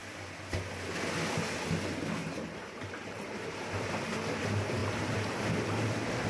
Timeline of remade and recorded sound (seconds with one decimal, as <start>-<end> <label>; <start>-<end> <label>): 0.0-2.2 recorded; 2.2-3.9 remade; 3.9-4.8 recorded; 4.8-5.4 remade; 5.4-6.3 recorded